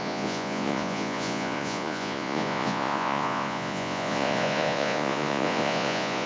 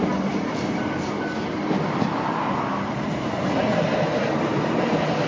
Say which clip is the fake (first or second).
first